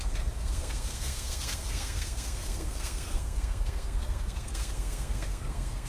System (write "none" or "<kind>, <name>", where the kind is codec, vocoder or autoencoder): codec, SNAC